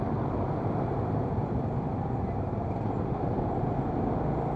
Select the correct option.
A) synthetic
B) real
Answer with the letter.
B